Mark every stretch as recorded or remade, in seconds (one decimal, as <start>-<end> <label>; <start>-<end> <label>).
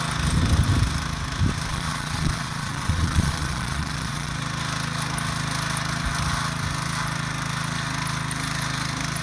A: 0.0-1.7 recorded; 1.7-4.3 remade; 4.3-9.2 recorded